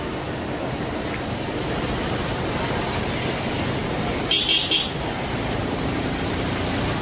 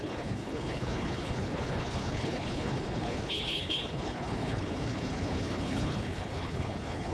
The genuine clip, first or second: first